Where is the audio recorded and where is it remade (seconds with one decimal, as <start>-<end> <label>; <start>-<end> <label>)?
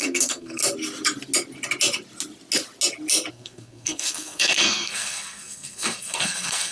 0.0-0.6 remade; 0.6-3.3 recorded; 3.3-6.7 remade